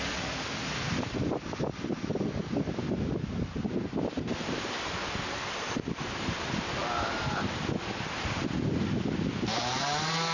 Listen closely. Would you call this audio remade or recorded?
recorded